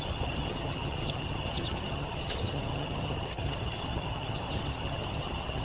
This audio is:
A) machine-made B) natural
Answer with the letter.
A